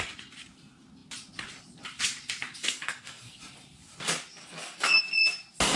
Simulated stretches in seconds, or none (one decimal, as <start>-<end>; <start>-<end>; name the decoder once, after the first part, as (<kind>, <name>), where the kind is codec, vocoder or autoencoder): 2.6-3.4 (codec, SNAC); 4.4-5.0

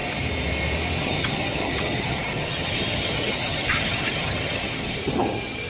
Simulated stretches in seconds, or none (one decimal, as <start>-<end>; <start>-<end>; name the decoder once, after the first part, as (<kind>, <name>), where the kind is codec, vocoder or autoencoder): 1.0-5.7 (vocoder, HiFi-GAN)